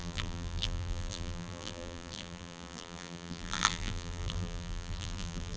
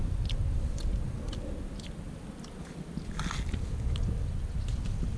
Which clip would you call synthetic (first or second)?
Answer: first